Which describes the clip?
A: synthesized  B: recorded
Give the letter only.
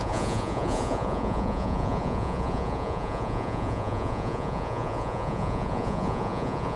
A